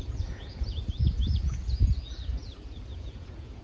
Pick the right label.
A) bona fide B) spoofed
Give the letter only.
B